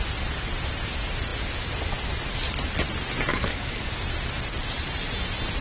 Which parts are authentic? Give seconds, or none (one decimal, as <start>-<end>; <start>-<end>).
0.0-3.3; 3.9-5.6